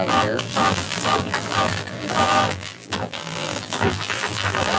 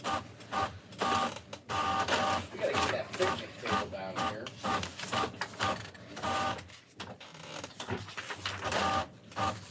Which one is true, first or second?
second